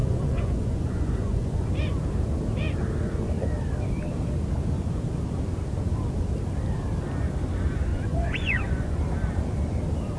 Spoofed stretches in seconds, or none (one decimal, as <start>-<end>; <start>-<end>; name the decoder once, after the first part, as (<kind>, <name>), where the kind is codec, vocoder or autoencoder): 0.0-1.7 (vocoder, Vocos); 7.9-9.0